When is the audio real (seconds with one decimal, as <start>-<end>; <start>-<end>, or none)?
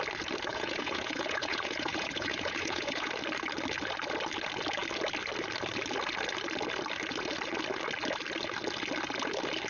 0.0-0.5; 3.1-9.7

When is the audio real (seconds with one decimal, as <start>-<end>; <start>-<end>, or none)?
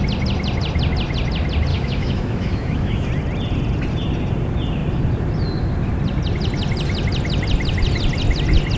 0.0-1.7; 3.1-8.8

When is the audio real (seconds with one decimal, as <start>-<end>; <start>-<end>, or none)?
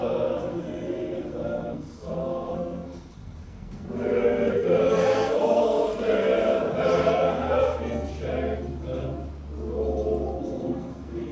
6.3-6.9; 8.1-10.4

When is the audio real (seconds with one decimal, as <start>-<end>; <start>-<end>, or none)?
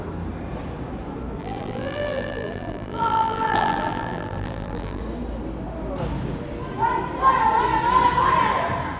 0.0-1.4; 5.0-9.0